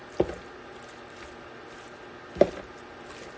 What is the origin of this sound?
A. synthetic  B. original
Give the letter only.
B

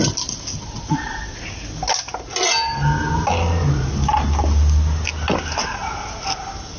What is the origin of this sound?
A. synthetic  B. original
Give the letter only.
B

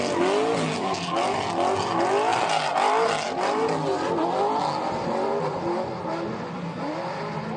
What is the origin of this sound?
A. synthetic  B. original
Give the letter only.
B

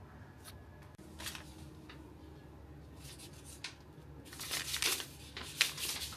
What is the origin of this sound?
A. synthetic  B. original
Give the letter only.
B